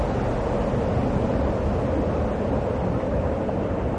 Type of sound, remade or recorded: recorded